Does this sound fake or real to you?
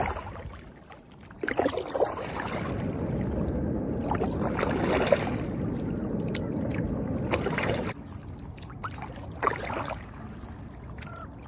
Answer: real